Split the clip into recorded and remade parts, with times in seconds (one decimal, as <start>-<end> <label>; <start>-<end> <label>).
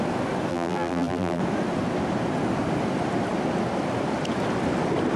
0.0-0.5 recorded; 0.5-1.4 remade; 1.4-5.2 recorded